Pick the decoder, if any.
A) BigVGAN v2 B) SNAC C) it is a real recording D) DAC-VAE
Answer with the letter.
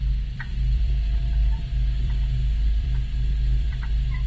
A